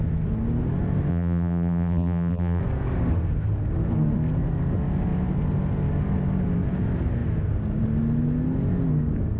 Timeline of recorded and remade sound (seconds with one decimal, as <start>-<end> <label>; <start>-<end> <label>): 0.0-1.1 recorded; 1.1-2.6 remade; 2.6-9.4 recorded

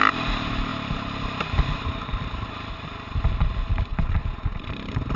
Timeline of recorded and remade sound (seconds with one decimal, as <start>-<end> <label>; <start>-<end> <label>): 0.0-3.9 recorded; 3.9-4.7 remade; 4.7-5.2 recorded

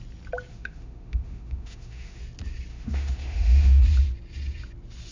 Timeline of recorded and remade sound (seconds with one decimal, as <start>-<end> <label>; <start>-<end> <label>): 0.0-0.5 recorded; 0.5-2.2 remade; 2.2-2.7 recorded; 2.7-3.8 remade; 3.8-5.1 recorded

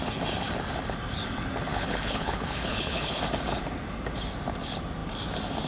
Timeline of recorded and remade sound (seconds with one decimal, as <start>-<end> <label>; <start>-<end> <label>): 0.0-1.7 recorded; 1.7-3.2 remade; 3.2-5.7 recorded

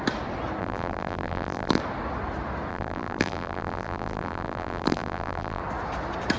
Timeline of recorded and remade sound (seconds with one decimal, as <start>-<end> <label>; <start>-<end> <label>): 0.0-0.6 recorded; 0.6-1.8 remade; 1.8-2.7 recorded; 2.7-5.6 remade; 5.6-6.4 recorded

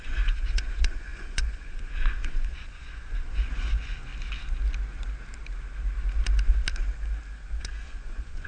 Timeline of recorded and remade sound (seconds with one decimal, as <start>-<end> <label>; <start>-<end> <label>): 0.0-4.1 remade; 4.1-7.6 recorded; 7.6-8.5 remade